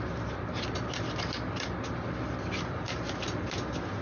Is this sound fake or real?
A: real